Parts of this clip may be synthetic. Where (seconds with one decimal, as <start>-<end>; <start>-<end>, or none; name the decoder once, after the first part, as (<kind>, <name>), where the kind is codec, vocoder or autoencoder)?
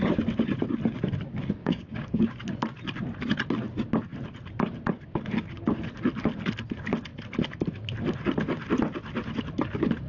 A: 1.6-2.2 (codec, DAC)